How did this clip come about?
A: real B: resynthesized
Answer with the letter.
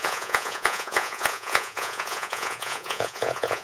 B